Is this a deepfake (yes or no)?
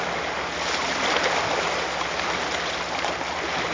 no